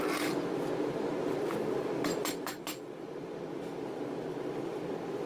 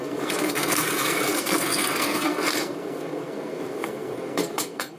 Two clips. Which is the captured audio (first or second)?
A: first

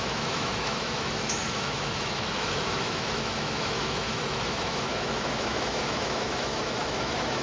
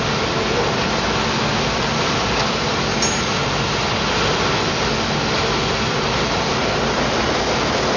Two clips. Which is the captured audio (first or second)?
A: second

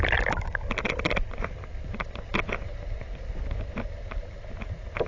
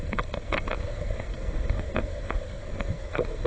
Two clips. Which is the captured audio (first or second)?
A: first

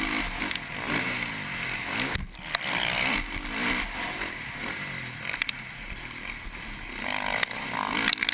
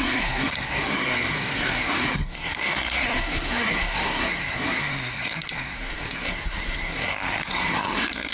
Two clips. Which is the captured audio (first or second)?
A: first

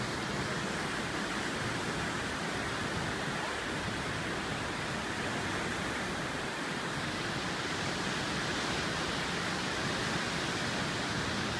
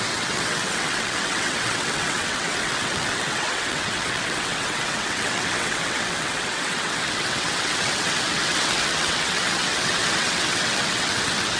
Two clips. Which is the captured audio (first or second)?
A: first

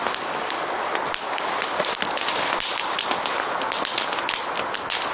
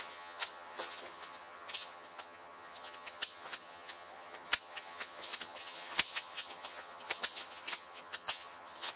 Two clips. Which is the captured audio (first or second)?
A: first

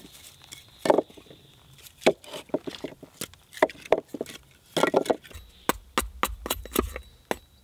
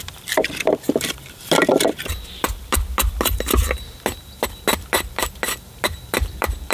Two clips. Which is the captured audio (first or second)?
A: first